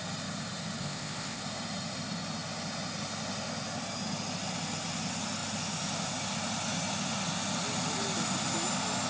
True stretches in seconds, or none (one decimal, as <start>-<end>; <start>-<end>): 0.0-0.8; 1.4-9.1